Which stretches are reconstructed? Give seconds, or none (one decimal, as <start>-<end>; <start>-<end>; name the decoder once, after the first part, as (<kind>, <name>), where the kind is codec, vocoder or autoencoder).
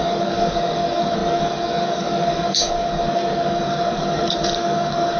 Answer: 0.0-5.2 (codec, DAC)